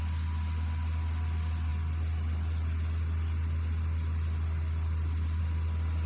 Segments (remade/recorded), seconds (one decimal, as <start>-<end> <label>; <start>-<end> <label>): 0.0-6.1 recorded